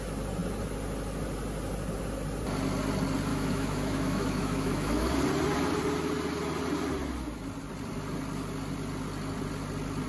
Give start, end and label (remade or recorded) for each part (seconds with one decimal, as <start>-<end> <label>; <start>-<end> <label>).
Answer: 0.0-3.3 recorded; 3.3-5.1 remade; 5.1-10.1 recorded